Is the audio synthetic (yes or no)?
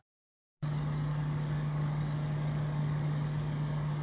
yes